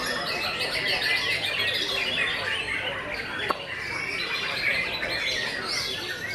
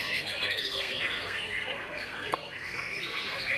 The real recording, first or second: first